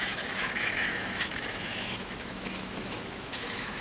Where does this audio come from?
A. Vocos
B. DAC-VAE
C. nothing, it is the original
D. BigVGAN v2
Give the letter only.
B